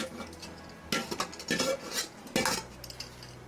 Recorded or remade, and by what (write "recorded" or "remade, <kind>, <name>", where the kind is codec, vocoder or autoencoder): recorded